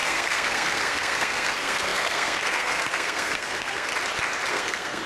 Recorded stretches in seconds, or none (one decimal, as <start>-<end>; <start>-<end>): 3.9-4.5